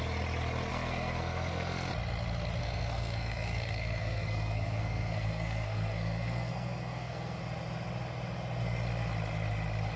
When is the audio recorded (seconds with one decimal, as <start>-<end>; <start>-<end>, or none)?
0.0-0.7; 1.9-2.6; 7.4-10.0